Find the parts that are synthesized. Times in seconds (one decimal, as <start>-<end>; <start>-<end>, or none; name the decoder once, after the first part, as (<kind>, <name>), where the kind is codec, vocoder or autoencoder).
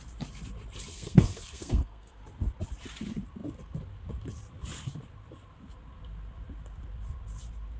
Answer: 0.9-2.2 (codec, SNAC)